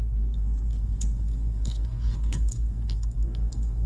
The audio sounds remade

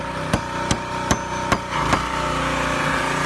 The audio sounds recorded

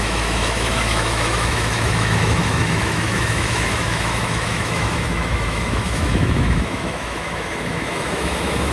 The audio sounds remade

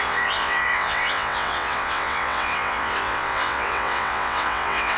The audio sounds remade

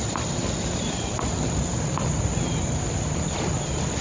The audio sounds recorded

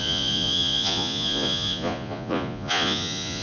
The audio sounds remade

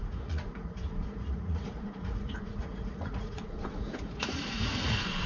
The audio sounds remade